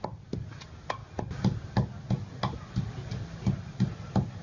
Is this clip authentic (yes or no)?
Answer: yes